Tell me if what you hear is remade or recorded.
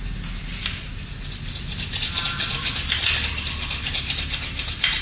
recorded